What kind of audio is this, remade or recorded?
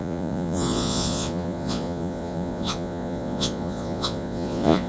remade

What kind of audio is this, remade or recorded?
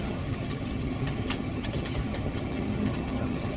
remade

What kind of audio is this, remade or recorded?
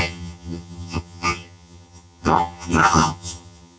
remade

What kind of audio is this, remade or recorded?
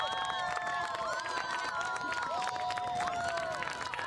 recorded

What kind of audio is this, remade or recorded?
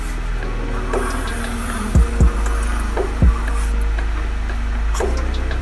recorded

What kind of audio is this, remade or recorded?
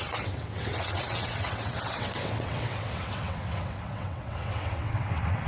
remade